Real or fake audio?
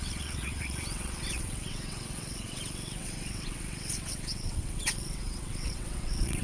fake